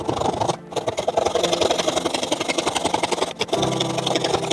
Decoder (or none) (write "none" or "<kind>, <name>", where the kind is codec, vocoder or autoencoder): none